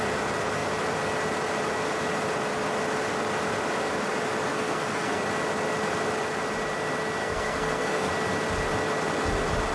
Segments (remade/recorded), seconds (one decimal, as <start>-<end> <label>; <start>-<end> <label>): 0.0-4.5 recorded; 4.5-5.2 remade; 5.2-7.2 recorded; 7.2-8.1 remade; 8.1-9.7 recorded